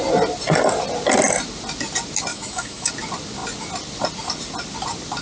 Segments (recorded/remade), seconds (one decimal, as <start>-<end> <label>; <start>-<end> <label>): 0.0-2.3 recorded; 2.3-2.9 remade; 2.9-5.2 recorded